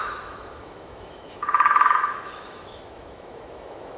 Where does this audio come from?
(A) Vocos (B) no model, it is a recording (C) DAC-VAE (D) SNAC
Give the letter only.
C